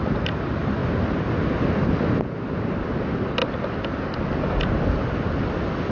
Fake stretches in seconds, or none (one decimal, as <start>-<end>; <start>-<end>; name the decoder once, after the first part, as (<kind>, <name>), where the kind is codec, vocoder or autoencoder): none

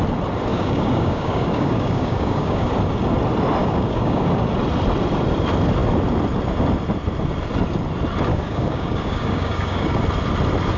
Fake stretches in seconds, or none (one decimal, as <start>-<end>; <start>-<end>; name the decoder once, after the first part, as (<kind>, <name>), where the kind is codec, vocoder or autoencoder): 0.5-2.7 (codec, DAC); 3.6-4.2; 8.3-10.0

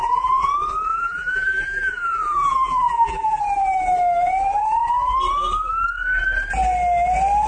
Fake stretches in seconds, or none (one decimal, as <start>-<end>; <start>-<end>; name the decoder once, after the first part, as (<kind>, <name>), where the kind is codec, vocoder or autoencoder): 0.0-0.5 (vocoder, BigVGAN v2); 0.9-3.4

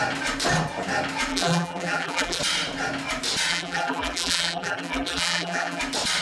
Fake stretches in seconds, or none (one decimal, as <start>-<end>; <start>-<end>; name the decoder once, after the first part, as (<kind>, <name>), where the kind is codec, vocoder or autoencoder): 1.3-2.4 (vocoder, BigVGAN v2); 3.5-5.8

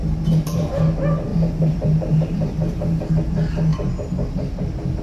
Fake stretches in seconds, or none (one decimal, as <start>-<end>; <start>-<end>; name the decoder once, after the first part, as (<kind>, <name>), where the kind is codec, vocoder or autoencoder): 0.0-0.7 (vocoder, BigVGAN v2); 1.3-3.1